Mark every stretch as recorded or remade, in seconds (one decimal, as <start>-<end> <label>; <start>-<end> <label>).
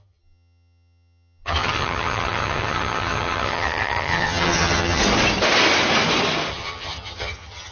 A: 0.0-5.0 remade; 5.0-6.5 recorded; 6.5-7.7 remade